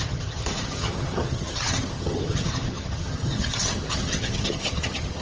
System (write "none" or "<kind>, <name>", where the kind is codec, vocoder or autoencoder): vocoder, HiFi-GAN